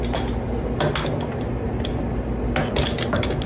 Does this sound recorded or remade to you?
recorded